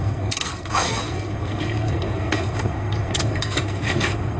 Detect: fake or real fake